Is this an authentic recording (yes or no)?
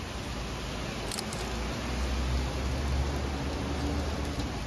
yes